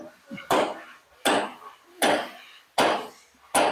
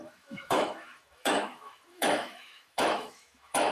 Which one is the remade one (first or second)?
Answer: second